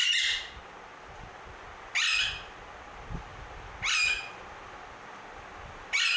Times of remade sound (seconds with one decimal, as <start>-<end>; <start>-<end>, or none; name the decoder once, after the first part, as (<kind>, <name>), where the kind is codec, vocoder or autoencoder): none